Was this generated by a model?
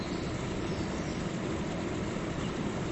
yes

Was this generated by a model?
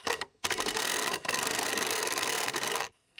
yes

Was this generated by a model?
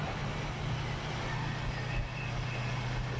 no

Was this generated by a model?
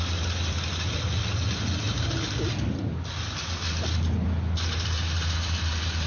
no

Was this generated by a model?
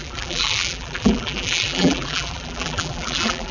yes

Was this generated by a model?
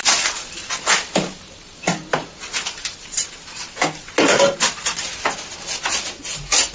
no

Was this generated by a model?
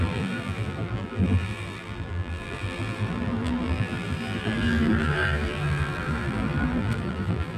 yes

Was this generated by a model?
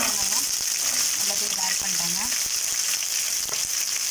no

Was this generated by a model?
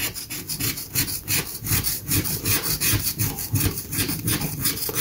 yes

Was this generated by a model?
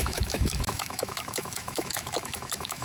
yes